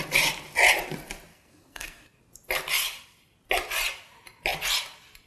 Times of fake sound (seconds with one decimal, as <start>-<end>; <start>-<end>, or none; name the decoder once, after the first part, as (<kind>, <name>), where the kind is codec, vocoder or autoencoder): 1.3-2.2 (codec, SNAC)